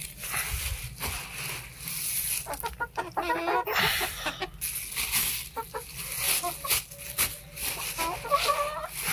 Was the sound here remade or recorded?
recorded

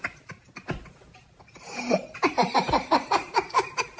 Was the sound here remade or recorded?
recorded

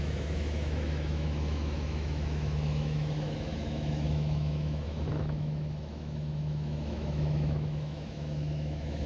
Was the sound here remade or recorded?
remade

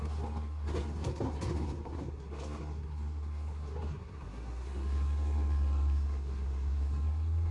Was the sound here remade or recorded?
remade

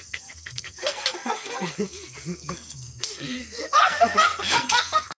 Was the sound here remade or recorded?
remade